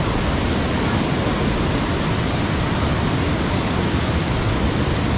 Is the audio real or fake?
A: real